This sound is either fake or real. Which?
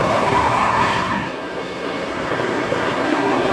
fake